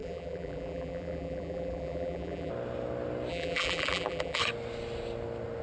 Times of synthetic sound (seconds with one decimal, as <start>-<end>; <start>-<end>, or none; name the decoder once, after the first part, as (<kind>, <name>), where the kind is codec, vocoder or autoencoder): 0.0-2.5 (vocoder, BigVGAN v2); 3.3-4.4